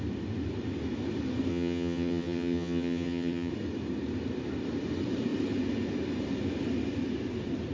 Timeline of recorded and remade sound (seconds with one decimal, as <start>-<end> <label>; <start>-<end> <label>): 0.0-1.5 recorded; 1.5-3.5 remade; 3.5-7.7 recorded